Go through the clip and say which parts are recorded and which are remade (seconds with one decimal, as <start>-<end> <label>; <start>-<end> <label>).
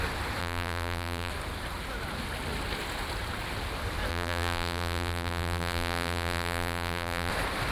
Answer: 0.0-0.4 recorded; 0.4-1.3 remade; 1.3-4.1 recorded; 4.1-7.3 remade; 7.3-7.7 recorded